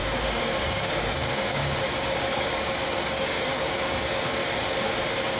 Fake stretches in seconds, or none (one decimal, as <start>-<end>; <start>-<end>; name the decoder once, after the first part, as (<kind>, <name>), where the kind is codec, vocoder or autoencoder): 0.0-4.4 (codec, DAC); 5.0-5.4

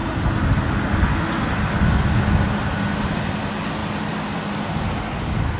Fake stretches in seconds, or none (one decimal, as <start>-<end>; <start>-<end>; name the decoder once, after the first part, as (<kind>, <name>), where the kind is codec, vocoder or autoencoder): none